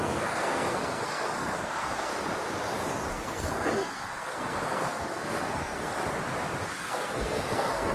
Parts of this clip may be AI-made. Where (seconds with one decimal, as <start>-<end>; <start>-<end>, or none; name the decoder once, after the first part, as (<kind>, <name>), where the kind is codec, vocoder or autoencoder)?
0.0-2.1 (codec, SNAC); 3.1-5.9; 6.8-7.9